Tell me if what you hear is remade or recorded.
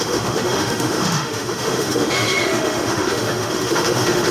remade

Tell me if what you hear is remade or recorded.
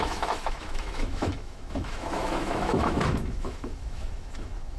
remade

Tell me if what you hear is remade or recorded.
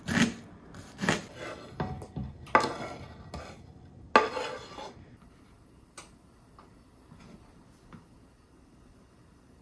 recorded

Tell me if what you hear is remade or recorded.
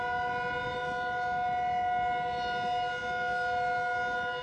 recorded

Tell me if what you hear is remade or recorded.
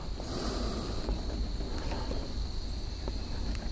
recorded